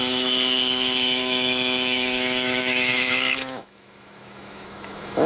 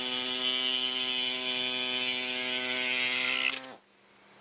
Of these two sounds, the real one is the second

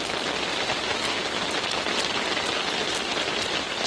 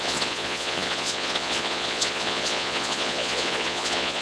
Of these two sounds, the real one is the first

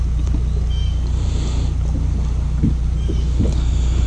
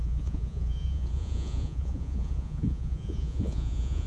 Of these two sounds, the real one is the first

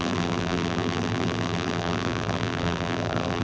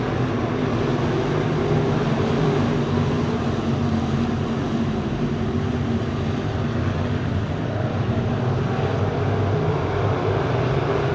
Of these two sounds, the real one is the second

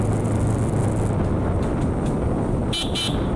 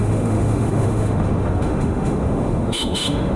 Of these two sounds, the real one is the first